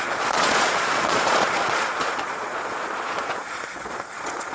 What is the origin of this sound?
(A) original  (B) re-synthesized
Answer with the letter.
B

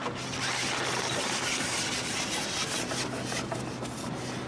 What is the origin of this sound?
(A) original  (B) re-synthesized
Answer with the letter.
A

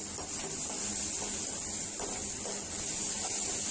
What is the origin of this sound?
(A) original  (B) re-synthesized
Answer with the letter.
A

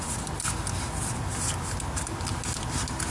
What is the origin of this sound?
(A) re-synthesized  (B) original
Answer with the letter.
B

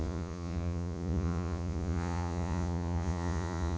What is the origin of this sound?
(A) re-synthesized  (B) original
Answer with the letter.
A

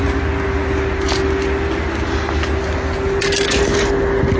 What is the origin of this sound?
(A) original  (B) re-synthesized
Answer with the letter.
A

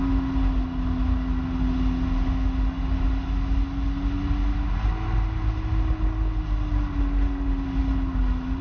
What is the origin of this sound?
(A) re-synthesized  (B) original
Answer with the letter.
B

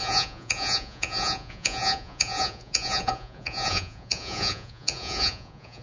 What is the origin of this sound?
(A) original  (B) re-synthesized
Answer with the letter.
B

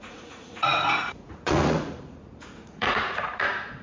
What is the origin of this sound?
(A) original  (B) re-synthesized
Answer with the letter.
B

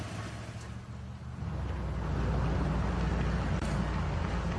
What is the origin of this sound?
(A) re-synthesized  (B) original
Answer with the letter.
B